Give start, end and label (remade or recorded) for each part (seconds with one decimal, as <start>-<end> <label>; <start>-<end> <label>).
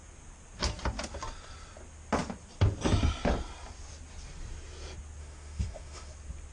0.0-5.2 recorded; 5.2-6.1 remade; 6.1-6.5 recorded